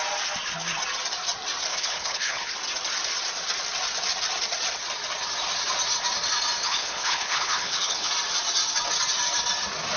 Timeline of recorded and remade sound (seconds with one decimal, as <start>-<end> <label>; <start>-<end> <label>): 0.0-1.7 recorded; 1.7-2.5 remade; 2.5-6.6 recorded; 6.6-8.1 remade; 8.1-10.0 recorded